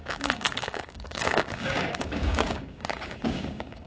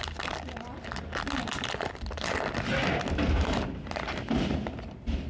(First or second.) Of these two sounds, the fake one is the first